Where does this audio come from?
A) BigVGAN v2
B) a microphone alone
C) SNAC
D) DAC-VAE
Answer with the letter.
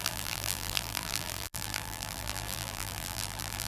A